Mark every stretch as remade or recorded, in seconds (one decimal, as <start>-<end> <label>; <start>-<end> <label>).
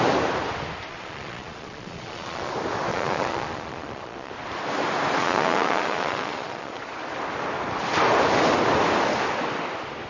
0.0-0.9 recorded; 0.9-2.5 remade; 2.5-2.9 recorded; 2.9-4.3 remade; 4.3-5.2 recorded; 5.2-6.8 remade; 6.8-10.1 recorded